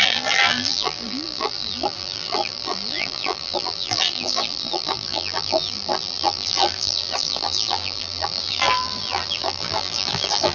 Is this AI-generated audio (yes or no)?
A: yes